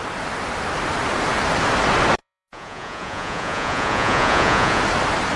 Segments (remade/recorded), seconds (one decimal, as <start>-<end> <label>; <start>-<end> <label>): 0.0-2.2 recorded; 2.2-4.8 remade; 4.8-5.4 recorded